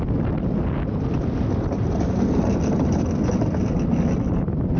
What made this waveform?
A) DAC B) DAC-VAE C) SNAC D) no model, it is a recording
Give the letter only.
D